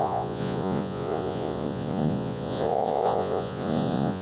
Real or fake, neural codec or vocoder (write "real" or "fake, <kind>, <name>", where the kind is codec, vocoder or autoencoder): fake, vocoder, Vocos